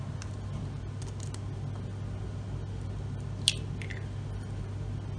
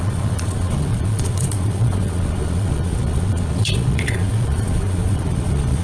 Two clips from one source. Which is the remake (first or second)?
second